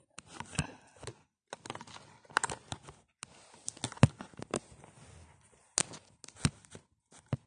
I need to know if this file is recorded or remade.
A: recorded